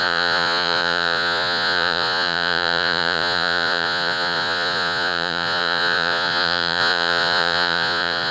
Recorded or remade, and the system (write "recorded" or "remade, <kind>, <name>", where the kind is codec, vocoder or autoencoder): remade, vocoder, Vocos